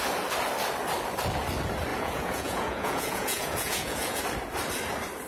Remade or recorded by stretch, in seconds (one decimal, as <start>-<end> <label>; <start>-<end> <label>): 0.0-1.9 recorded; 1.9-4.2 remade; 4.2-5.3 recorded